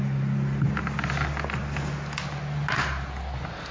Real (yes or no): yes